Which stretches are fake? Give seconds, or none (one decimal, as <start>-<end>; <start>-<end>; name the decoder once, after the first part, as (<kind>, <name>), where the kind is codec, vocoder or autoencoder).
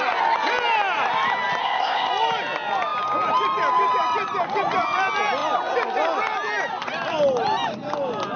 1.6-2.1 (codec, ZipCodec)